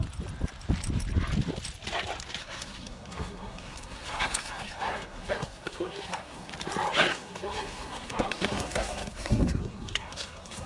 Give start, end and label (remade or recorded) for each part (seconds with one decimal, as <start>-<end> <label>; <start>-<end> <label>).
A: 0.0-2.4 recorded; 2.4-6.5 remade; 6.5-7.1 recorded; 7.1-10.7 remade